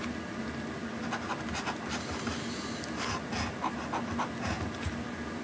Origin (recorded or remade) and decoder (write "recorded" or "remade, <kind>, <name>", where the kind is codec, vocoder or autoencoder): recorded